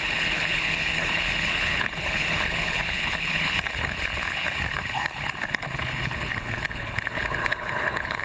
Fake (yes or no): yes